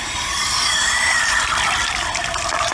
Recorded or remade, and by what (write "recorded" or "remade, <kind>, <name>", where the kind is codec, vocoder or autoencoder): remade, vocoder, BigVGAN v2